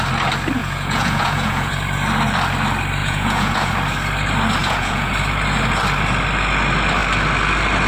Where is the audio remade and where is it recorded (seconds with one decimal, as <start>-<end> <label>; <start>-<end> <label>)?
0.0-0.6 recorded; 0.6-1.7 remade; 1.7-3.0 recorded; 3.0-3.7 remade; 3.7-4.6 recorded; 4.6-5.1 remade; 5.1-7.9 recorded